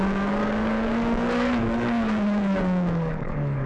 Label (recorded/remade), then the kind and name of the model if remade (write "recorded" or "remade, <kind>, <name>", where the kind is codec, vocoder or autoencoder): remade, codec, DAC